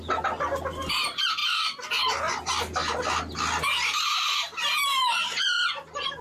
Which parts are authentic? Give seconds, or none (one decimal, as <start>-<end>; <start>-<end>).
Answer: 0.0-6.2